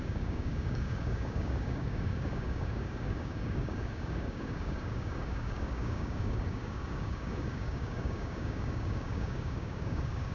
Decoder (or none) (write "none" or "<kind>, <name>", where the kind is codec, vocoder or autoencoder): codec, DAC